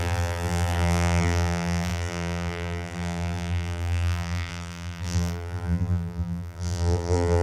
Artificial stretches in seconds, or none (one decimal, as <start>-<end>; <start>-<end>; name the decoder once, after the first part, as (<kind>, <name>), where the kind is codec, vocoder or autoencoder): 0.0-7.4 (vocoder, BigVGAN v2)